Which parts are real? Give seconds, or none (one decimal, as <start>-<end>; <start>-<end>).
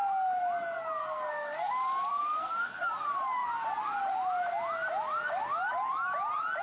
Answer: 0.0-1.0; 1.7-2.1; 2.9-6.6